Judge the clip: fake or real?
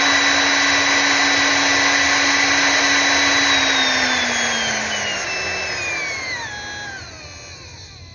real